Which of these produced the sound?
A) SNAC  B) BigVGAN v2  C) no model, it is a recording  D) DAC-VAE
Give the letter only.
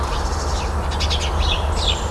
C